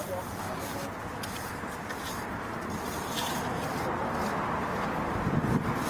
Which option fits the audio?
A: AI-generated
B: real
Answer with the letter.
B